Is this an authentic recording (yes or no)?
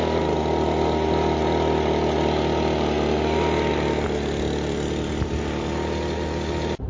yes